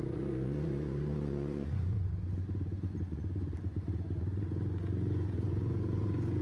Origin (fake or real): fake